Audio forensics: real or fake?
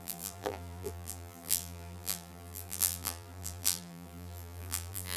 fake